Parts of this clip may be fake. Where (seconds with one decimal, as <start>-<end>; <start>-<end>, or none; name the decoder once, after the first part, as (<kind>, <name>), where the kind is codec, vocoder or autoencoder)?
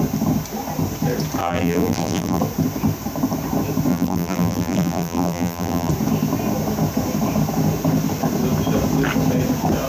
1.4-2.4 (vocoder, BigVGAN v2); 3.9-5.9